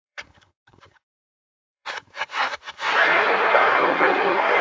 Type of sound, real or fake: fake